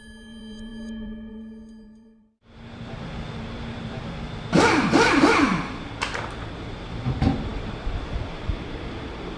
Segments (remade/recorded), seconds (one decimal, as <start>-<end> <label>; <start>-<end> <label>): 0.0-5.5 remade; 5.5-6.5 recorded; 6.5-9.4 remade